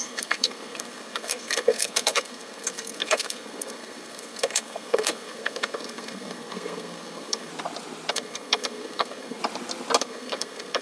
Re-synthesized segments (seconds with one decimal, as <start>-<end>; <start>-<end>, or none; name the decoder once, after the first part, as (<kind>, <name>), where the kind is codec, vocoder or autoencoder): 0.0-7.5 (codec, SNAC); 8.1-9.4; 10.0-10.8